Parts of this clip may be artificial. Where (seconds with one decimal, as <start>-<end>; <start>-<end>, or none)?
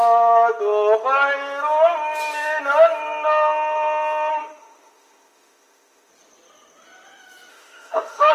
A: 4.3-6.1; 7.5-8.3